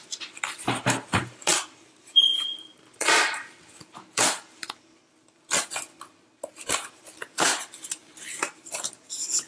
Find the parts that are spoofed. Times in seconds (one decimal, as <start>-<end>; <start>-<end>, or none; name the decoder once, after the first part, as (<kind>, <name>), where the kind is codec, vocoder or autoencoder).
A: 0.0-4.9 (vocoder, BigVGAN v2); 6.7-9.5